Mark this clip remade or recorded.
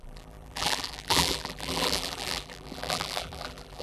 remade